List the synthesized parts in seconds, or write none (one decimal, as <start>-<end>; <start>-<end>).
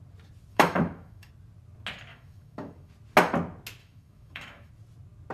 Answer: 0.5-1.3; 2.1-2.9; 3.8-4.7